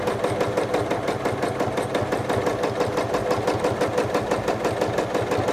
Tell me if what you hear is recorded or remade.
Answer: recorded